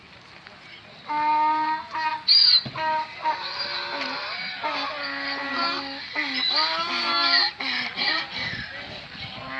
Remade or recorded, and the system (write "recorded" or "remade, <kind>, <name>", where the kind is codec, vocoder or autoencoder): recorded